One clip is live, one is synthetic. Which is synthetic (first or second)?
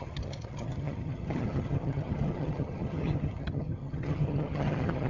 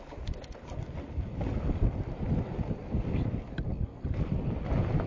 first